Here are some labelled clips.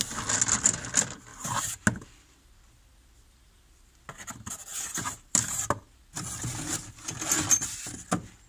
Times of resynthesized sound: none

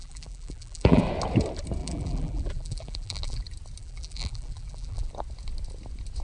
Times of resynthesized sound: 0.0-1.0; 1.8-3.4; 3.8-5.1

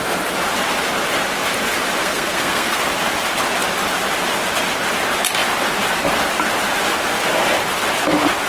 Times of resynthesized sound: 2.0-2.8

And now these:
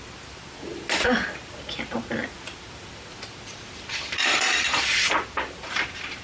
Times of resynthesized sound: 0.0-6.2